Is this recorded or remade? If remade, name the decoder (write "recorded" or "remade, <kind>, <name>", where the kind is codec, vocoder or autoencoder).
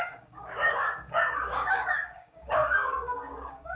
remade, codec, DAC